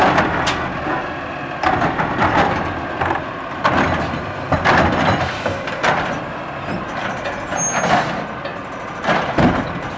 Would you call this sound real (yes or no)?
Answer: yes